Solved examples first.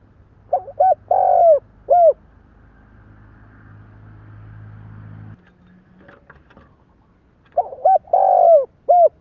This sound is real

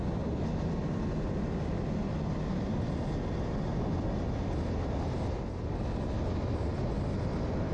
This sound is real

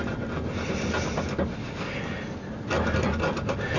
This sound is real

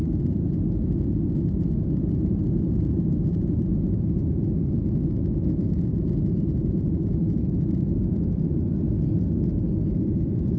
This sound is real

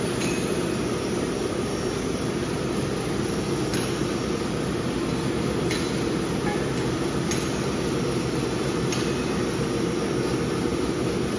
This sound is real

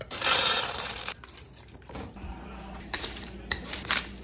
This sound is fake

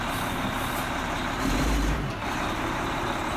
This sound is fake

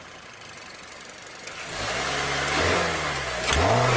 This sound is real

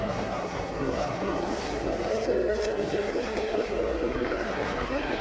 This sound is fake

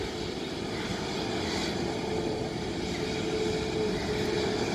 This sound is real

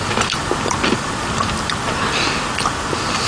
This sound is real